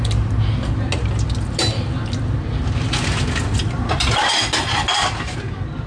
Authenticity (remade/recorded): recorded